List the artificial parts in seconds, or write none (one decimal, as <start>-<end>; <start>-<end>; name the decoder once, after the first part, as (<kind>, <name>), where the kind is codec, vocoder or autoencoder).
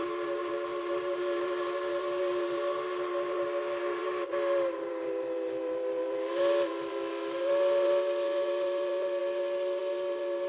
0.0-10.5 (vocoder, BigVGAN v2)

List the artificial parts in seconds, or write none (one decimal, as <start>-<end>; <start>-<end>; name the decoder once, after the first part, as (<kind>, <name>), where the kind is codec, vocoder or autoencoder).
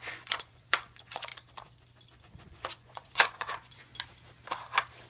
0.0-1.3 (vocoder, Vocos); 2.2-3.9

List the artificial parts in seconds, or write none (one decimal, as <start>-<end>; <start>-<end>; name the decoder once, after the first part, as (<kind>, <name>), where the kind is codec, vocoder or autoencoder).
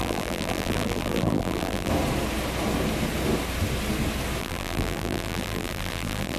0.0-1.9 (vocoder, BigVGAN v2); 4.4-6.4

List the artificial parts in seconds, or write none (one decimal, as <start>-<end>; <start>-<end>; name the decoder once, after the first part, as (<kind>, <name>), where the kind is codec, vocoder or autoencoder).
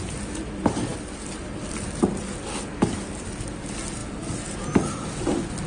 none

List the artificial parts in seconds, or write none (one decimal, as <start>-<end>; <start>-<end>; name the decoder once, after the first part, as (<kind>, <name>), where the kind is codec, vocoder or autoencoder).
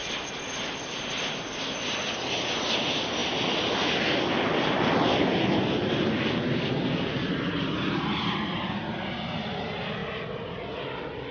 0.0-0.5 (vocoder, BigVGAN v2); 5.8-9.1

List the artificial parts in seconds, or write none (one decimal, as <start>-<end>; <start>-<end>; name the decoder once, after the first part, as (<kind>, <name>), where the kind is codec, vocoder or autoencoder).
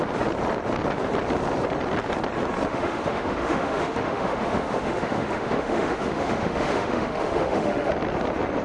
2.7-7.9 (autoencoder, DAC-VAE)